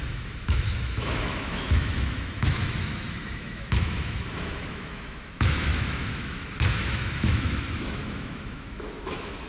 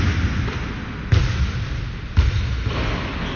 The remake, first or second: first